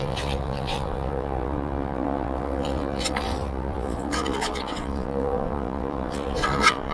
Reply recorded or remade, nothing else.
remade